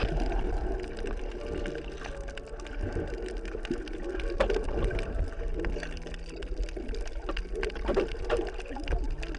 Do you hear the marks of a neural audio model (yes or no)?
no